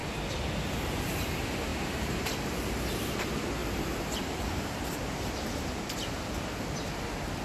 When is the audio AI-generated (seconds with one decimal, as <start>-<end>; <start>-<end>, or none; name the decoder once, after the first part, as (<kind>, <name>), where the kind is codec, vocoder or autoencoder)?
1.7-2.5 (vocoder, BigVGAN v2); 3.6-5.8